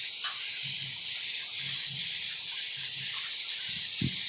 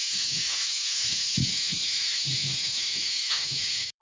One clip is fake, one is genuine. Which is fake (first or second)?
second